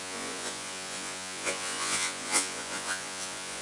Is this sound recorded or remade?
remade